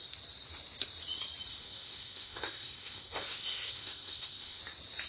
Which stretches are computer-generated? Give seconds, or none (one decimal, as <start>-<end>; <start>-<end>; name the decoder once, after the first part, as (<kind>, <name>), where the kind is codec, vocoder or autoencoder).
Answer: 1.5-4.6 (codec, SNAC)